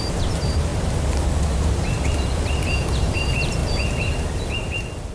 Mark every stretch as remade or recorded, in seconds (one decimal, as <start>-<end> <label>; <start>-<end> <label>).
0.0-2.3 remade; 2.3-3.0 recorded; 3.0-3.6 remade; 3.6-5.1 recorded